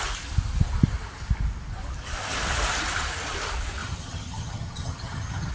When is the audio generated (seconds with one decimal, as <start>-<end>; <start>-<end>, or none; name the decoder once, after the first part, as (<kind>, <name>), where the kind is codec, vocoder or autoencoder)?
3.8-5.5 (vocoder, HiFi-GAN)